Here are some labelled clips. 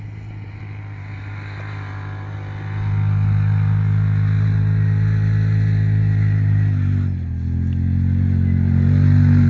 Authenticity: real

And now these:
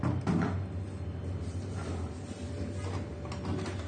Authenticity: real